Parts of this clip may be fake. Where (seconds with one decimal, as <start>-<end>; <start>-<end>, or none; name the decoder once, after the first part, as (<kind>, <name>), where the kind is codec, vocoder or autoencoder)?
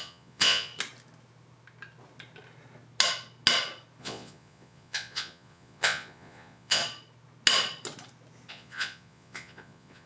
0.0-0.7 (vocoder, Vocos); 4.0-6.8; 8.5-10.1